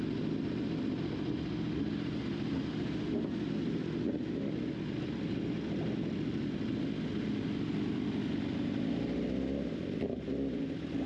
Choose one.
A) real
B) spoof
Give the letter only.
A